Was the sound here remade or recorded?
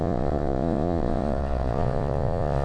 remade